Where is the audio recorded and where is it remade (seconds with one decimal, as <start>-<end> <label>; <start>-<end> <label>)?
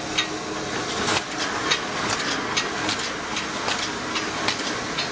0.0-5.1 recorded